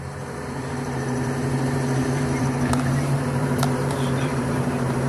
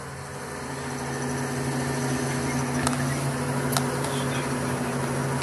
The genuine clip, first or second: second